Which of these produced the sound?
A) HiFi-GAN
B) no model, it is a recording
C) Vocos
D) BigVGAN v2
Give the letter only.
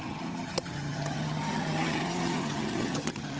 A